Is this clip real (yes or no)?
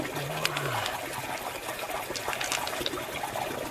yes